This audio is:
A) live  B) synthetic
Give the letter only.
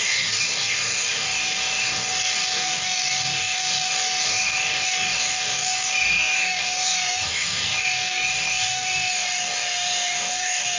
B